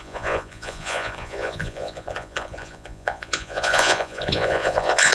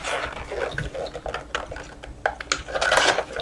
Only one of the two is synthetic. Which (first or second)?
first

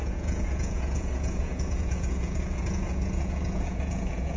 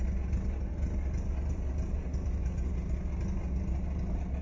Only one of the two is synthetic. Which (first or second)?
first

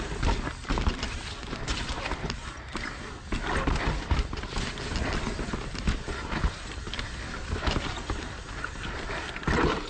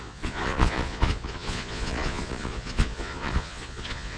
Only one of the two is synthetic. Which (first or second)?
second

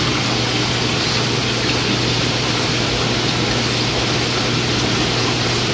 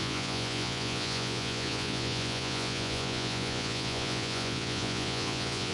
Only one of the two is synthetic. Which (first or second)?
second